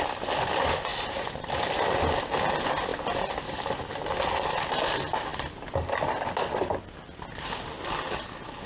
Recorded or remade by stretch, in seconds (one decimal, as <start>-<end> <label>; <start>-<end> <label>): 0.0-0.9 recorded; 0.9-1.5 remade; 1.5-8.7 recorded